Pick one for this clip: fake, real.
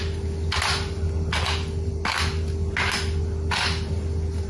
real